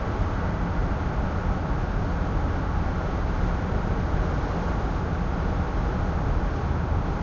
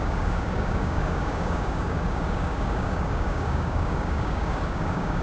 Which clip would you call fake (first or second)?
second